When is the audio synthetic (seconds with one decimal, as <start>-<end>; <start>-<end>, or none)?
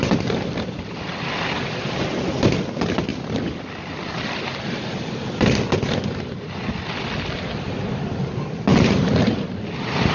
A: none